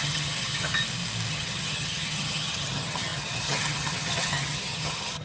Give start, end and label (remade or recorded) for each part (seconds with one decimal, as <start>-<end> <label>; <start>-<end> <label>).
0.0-0.8 remade; 0.8-1.3 recorded; 1.3-5.2 remade